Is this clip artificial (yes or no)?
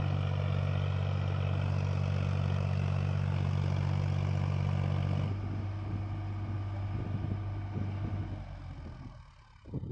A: no